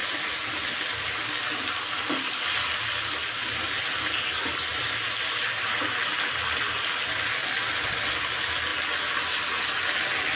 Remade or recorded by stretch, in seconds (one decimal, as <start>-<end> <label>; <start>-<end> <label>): 0.0-1.8 remade; 1.8-4.7 recorded; 4.7-6.6 remade; 6.6-10.4 recorded